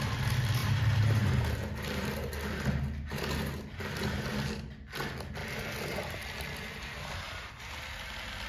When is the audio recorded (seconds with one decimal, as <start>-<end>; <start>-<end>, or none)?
0.0-0.6; 1.4-8.5